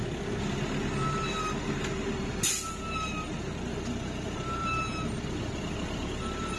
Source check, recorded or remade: recorded